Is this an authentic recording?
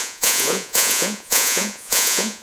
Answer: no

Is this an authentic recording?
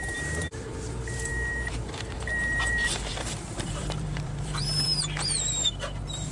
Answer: no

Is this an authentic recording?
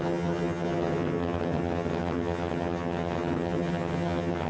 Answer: no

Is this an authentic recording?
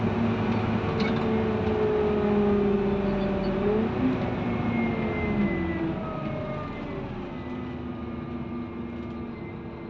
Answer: yes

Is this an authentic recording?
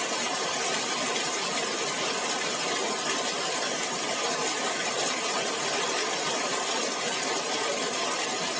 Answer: yes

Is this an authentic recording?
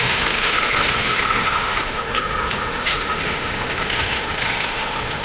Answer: no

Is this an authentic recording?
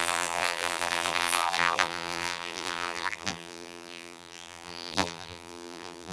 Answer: no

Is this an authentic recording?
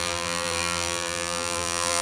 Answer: no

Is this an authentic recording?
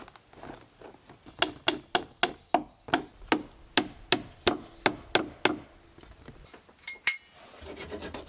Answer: yes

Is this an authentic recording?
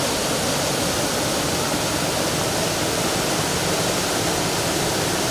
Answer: yes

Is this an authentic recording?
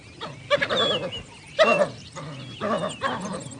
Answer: yes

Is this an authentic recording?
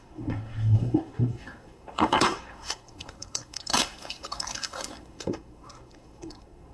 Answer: no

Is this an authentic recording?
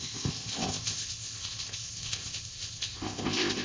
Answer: no